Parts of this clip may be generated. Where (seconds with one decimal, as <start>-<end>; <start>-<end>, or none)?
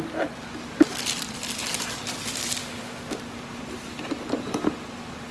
2.6-3.2